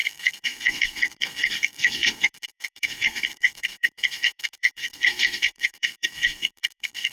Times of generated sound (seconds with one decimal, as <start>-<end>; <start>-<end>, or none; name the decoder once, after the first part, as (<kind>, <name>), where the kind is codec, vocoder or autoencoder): 0.0-7.1 (codec, SNAC)